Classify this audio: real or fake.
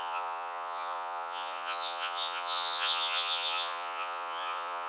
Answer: fake